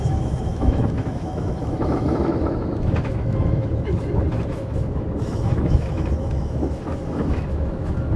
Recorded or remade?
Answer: remade